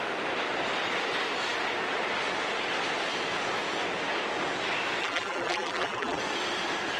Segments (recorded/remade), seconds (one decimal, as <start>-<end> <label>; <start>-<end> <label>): 0.0-5.0 recorded; 5.0-6.2 remade; 6.2-7.0 recorded